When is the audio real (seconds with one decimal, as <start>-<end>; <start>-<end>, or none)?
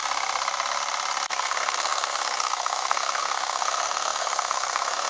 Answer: 0.0-1.3